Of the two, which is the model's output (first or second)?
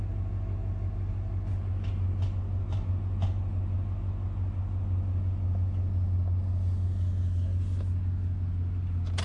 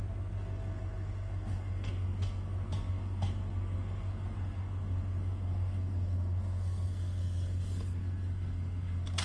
second